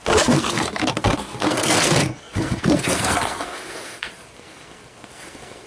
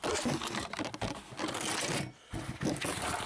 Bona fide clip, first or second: second